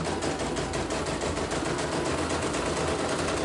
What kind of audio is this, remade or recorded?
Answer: recorded